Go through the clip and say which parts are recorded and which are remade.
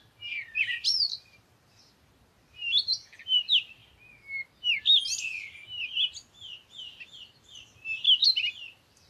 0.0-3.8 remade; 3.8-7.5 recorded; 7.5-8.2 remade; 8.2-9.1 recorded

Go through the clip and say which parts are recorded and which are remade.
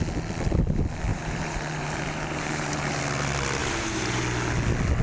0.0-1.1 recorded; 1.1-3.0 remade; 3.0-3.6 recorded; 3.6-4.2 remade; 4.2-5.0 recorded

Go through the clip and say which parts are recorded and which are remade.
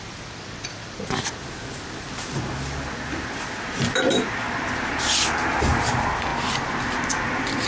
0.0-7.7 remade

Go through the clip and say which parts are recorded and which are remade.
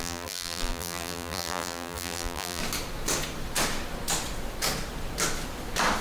0.0-2.6 remade; 2.6-6.0 recorded